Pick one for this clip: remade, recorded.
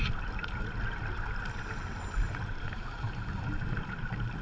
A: recorded